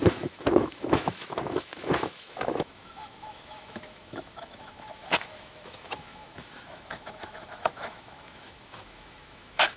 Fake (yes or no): yes